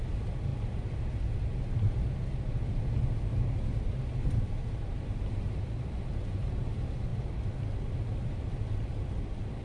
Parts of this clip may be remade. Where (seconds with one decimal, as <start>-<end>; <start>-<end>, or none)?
0.0-0.5; 3.2-7.1; 9.2-9.6